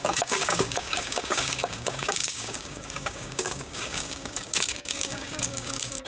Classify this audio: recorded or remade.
remade